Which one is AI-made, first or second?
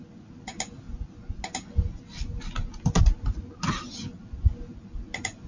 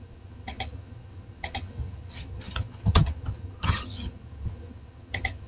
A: second